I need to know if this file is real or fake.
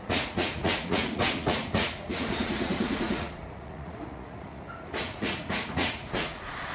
fake